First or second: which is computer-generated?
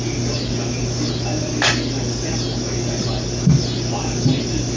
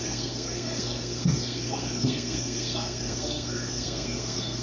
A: second